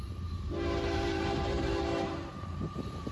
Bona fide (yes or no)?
no